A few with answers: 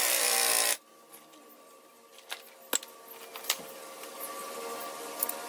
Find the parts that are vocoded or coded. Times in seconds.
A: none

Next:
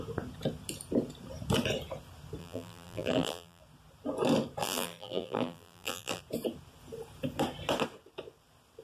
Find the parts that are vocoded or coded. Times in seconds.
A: 2.4-3.6 (vocoder, BigVGAN v2); 4.6-6.2

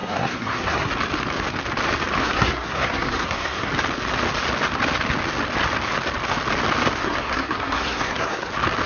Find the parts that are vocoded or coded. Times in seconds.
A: 0.0-0.9 (codec, SNAC); 2.2-3.7; 7.0-8.5

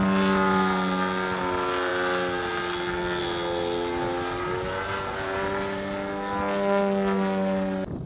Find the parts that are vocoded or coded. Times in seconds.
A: none

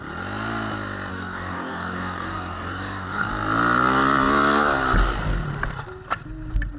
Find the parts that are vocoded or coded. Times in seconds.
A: 1.1-3.3 (codec, DAC)